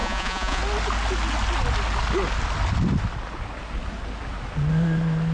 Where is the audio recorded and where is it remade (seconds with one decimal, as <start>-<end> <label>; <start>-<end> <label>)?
0.0-0.6 remade; 0.6-5.3 recorded